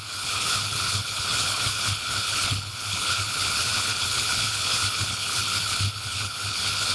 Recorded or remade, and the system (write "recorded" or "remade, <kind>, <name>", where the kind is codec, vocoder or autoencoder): remade, codec, HILCodec